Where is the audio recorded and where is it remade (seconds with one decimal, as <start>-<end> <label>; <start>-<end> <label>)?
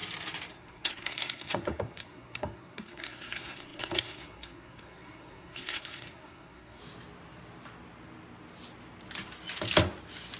0.0-0.5 recorded; 0.5-6.8 remade; 6.8-10.4 recorded